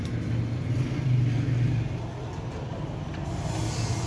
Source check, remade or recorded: recorded